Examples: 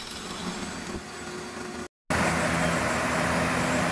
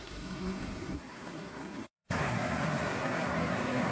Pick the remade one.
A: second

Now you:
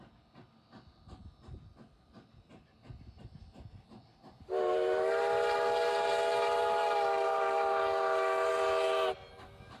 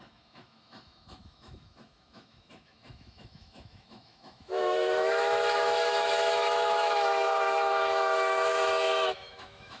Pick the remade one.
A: second